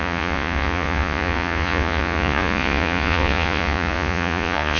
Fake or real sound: fake